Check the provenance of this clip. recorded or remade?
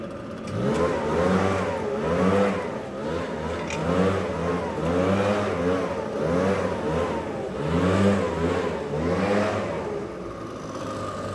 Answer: recorded